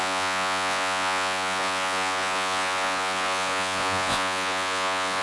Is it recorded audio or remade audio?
remade